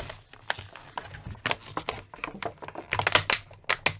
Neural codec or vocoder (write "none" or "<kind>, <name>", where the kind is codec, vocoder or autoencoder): none